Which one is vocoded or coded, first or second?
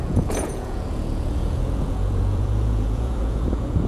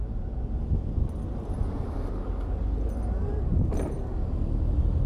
first